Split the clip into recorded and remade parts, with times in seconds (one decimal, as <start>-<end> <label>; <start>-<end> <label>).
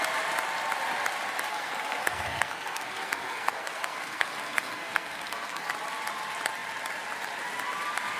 0.0-1.5 recorded; 1.5-5.7 remade; 5.7-8.2 recorded